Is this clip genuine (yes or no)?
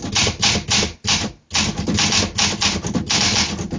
yes